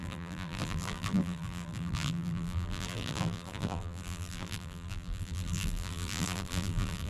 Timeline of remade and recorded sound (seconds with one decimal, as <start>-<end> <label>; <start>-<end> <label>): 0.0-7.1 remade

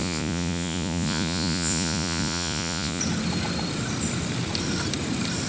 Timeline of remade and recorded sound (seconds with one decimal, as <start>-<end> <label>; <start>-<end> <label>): 0.0-3.0 remade; 3.0-5.5 recorded

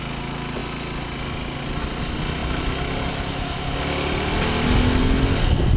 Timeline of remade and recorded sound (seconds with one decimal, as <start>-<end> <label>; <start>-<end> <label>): 0.0-5.8 recorded

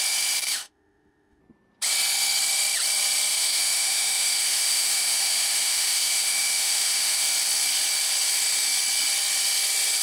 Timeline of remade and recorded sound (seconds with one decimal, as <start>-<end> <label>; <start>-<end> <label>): 0.0-0.5 recorded; 0.5-1.4 remade; 1.4-3.3 recorded; 3.3-7.2 remade; 7.2-10.0 recorded